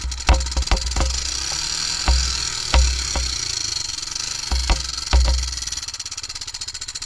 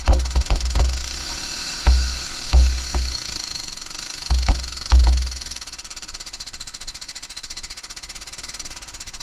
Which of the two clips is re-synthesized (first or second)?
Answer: second